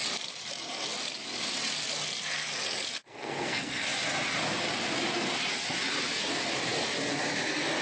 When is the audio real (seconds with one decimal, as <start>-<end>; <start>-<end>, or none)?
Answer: 0.0-3.0; 3.9-7.8